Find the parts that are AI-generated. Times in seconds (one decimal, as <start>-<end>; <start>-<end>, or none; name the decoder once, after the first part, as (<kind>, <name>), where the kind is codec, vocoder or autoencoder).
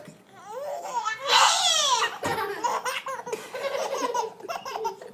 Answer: 0.7-1.6 (codec, SNAC)